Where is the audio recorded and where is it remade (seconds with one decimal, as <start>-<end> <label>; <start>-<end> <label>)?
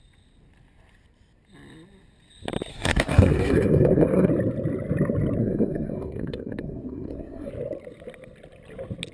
0.0-2.7 recorded; 2.7-4.3 remade; 4.3-5.4 recorded; 5.4-7.5 remade; 7.5-9.1 recorded